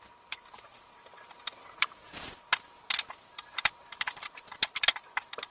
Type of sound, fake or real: fake